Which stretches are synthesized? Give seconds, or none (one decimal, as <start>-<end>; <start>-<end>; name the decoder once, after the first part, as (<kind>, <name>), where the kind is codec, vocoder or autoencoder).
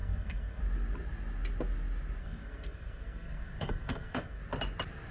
0.0-0.6 (codec, SNAC); 2.2-4.4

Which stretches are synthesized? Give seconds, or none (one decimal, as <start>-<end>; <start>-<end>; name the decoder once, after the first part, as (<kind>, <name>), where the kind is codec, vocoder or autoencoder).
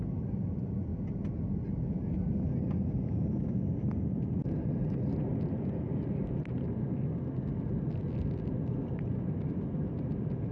none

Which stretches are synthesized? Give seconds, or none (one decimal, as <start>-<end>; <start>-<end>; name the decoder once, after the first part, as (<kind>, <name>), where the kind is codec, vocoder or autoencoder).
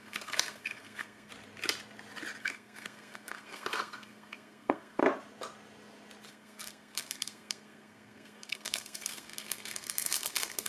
0.0-1.3 (codec, SNAC); 2.4-5.0; 6.3-10.7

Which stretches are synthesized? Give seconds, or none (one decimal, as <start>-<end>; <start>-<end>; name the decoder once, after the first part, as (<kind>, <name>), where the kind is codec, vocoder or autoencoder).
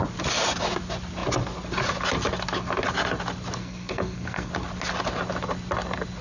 3.6-4.5 (codec, SNAC)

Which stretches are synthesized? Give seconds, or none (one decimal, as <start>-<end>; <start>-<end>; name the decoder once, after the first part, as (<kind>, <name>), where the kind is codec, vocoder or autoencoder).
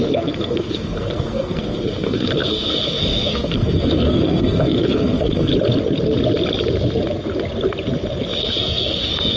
0.0-5.5 (codec, SNAC); 8.4-9.4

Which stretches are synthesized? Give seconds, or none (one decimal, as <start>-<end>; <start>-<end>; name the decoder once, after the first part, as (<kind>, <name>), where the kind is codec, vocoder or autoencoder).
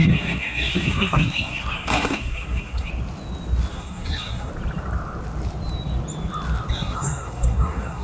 0.0-2.9 (codec, SNAC); 3.7-4.5; 6.7-8.0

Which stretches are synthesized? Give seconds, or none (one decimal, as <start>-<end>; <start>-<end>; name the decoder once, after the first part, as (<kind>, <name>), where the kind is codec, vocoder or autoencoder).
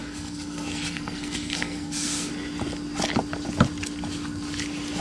0.0-2.3 (codec, SNAC)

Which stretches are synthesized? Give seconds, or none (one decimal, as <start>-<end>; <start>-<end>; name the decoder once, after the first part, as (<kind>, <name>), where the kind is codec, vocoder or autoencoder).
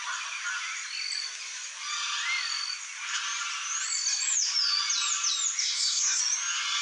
5.6-6.2 (codec, SNAC)